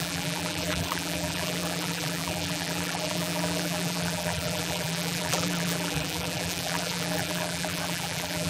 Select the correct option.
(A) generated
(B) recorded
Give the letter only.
A